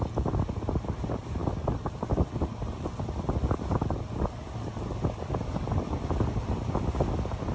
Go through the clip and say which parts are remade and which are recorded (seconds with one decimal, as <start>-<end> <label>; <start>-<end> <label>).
0.0-7.5 recorded